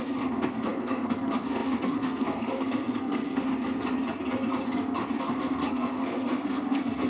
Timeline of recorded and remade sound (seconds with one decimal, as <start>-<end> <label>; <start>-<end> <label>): 0.0-3.5 remade; 3.5-5.2 recorded; 5.2-7.1 remade